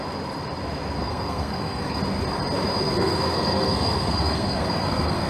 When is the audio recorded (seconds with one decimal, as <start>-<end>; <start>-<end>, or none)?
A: 0.0-1.0; 2.0-3.0